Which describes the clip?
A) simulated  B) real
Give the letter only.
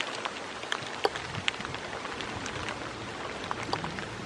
B